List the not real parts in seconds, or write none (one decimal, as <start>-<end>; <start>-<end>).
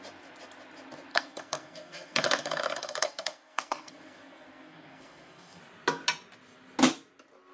1.1-5.6